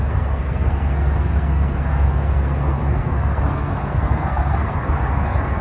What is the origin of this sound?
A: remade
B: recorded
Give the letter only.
A